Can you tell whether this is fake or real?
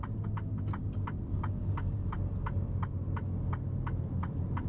real